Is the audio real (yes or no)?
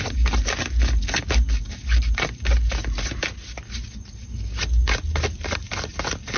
yes